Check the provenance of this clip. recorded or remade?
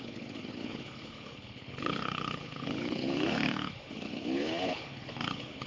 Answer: remade